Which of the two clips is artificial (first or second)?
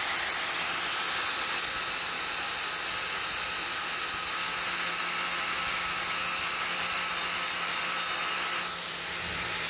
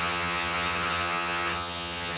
second